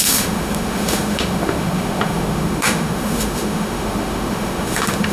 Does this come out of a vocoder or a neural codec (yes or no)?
yes